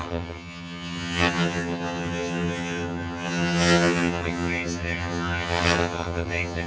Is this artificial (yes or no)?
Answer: yes